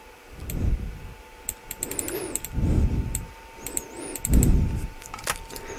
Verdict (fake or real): fake